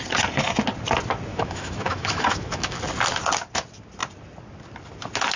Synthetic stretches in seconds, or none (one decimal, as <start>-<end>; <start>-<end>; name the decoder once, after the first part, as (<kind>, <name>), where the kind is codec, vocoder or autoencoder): 1.3-2.8 (autoencoder, DAC-VAE)